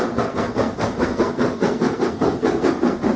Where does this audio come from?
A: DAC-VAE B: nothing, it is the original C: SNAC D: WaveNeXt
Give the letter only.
C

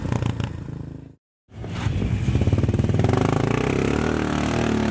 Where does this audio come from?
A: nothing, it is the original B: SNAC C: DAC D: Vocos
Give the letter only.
A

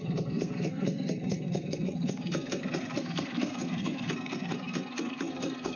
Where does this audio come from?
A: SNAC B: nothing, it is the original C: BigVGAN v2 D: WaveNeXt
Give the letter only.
A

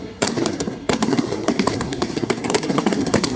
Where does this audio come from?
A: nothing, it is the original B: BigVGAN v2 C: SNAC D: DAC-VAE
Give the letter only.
C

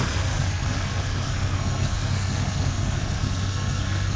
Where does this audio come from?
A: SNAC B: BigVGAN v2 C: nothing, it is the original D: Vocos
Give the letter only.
A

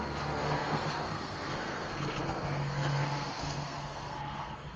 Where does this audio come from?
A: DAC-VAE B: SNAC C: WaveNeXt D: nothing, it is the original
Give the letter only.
B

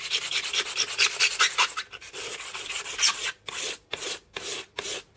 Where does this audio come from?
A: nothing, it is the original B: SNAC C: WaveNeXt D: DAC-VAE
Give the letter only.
A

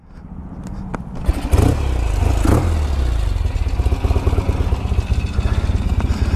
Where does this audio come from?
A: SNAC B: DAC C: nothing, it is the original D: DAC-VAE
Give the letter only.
C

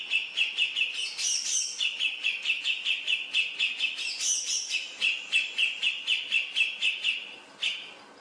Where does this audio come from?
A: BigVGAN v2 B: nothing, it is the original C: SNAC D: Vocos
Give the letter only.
B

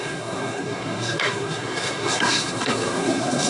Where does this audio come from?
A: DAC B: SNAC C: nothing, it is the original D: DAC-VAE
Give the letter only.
B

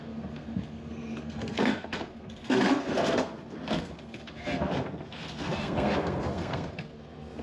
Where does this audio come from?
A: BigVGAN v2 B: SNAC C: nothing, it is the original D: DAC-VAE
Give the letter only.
B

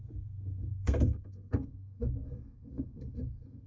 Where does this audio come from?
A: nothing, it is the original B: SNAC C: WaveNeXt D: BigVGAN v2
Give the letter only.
B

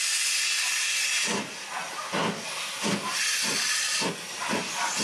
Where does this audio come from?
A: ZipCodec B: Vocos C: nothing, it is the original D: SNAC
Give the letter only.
C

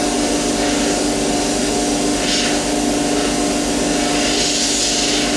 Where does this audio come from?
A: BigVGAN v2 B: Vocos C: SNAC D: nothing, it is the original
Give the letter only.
D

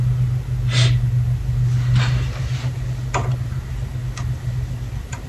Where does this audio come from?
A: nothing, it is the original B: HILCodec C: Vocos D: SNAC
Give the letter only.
A